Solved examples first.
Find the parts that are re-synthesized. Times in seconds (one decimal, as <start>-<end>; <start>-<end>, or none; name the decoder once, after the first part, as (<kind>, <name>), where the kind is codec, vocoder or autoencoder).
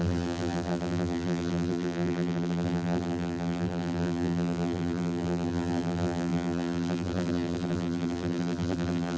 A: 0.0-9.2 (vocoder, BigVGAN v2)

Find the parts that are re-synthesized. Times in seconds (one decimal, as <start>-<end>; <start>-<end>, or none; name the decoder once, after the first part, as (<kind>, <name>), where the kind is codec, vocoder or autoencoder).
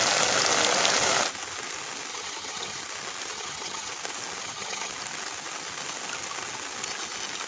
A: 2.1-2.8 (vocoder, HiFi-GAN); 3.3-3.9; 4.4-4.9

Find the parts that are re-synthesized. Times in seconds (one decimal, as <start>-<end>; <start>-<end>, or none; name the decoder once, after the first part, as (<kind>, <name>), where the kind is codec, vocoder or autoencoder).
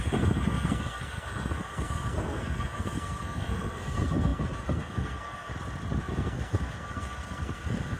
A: 0.0-5.5 (codec, SNAC); 6.0-8.0